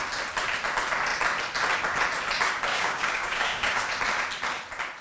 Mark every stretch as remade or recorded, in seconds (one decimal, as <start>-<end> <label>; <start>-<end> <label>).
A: 0.0-2.7 recorded; 2.7-3.8 remade; 3.8-5.0 recorded